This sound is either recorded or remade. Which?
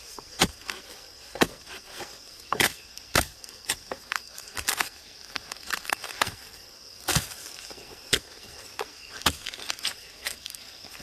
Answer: remade